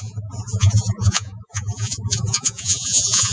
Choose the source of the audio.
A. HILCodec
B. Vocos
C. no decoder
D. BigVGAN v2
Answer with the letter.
B